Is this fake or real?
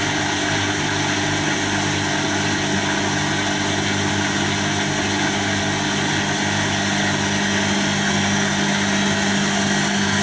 real